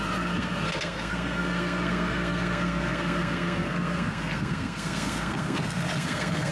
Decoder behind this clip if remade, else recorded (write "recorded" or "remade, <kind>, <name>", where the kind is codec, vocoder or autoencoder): remade, codec, SNAC